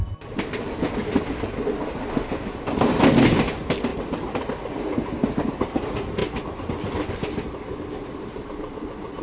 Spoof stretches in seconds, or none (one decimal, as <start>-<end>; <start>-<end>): none